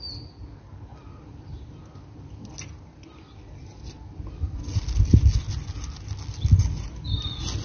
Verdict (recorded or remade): recorded